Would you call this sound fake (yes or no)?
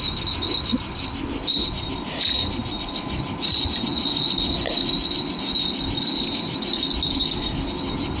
no